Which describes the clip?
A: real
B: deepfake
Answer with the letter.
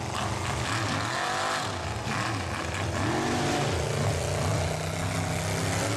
A